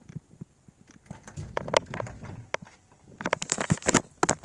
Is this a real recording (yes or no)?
yes